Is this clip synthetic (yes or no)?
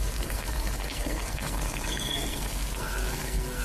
yes